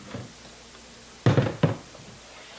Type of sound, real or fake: real